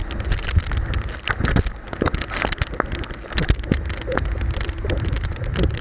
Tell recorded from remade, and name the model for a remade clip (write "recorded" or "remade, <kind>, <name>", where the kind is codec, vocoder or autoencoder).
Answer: recorded